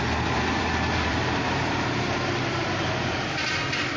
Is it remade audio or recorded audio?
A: remade